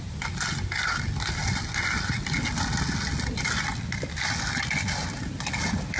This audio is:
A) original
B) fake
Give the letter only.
A